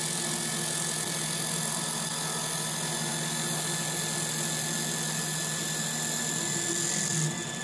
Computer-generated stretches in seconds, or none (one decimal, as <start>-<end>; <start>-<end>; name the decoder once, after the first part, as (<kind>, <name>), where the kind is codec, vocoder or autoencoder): none

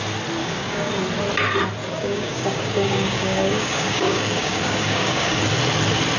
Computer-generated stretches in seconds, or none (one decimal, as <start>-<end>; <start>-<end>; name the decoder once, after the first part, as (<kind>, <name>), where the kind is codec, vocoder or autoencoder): 0.4-0.9 (codec, DAC); 1.8-5.4

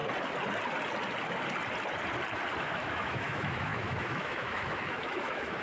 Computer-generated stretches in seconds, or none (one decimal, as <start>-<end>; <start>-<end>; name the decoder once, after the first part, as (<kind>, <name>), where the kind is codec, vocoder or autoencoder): 2.6-5.6 (autoencoder, DAC-VAE)

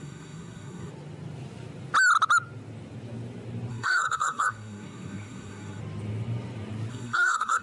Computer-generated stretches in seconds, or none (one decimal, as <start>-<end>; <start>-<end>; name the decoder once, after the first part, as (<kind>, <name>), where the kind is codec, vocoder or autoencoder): 0.0-0.9 (codec, SNAC); 3.7-5.8; 6.9-7.6